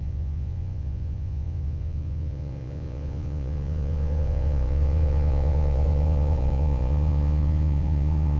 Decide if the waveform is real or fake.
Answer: fake